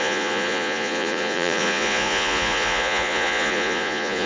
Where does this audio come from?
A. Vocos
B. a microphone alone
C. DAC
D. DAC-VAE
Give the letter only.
A